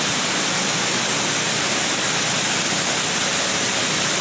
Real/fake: real